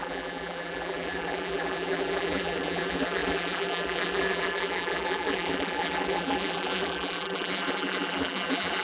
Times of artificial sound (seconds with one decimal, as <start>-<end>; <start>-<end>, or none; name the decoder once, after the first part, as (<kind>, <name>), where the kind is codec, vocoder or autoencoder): 0.0-8.8 (vocoder, BigVGAN v2)